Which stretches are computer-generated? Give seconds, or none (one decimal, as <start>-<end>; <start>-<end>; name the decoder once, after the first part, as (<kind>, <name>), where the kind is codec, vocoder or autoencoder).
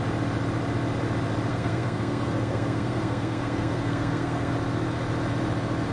1.5-4.5 (codec, SNAC)